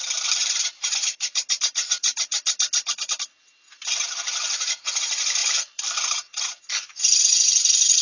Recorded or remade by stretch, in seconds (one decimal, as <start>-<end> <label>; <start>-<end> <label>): 0.0-8.0 remade